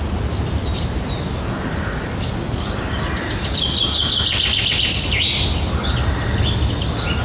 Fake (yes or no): no